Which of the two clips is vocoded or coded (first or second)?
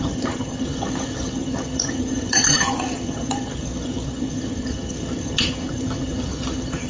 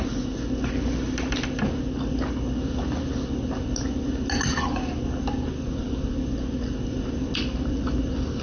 first